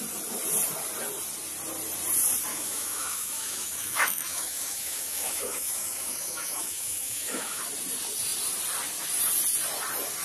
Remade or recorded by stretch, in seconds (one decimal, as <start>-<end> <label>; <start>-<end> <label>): 0.0-2.5 recorded; 2.5-7.6 remade; 7.6-10.2 recorded